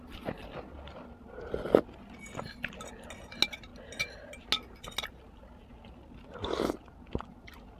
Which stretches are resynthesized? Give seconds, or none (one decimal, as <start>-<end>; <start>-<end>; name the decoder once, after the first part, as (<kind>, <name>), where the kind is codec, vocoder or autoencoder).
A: none